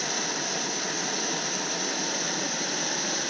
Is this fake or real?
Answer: real